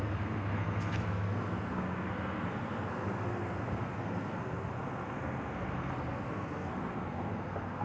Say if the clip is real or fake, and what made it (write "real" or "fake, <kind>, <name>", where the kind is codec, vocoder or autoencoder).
fake, codec, SNAC